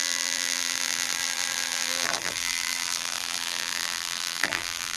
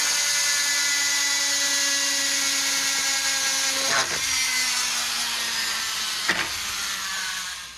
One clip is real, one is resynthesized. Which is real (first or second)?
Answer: second